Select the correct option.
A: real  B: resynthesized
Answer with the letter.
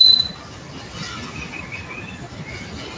A